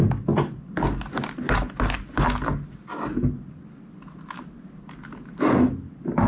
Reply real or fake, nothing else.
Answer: real